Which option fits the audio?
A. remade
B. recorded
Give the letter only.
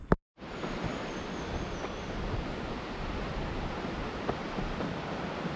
B